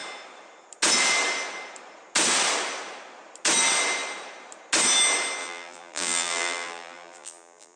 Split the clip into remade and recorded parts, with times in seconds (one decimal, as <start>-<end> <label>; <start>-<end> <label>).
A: 0.0-5.4 recorded; 5.4-7.8 remade